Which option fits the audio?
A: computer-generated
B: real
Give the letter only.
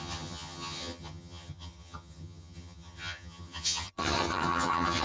A